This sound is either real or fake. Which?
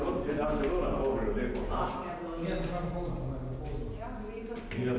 real